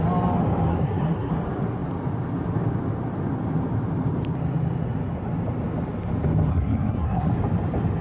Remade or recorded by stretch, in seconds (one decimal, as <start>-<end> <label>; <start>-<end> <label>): 0.0-0.7 recorded; 0.7-1.3 remade; 1.3-6.5 recorded; 6.5-7.3 remade; 7.3-8.0 recorded